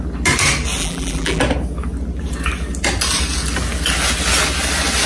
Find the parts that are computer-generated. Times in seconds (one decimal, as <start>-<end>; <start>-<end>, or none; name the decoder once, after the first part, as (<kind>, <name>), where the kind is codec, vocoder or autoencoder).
0.8-1.4 (vocoder, BigVGAN v2)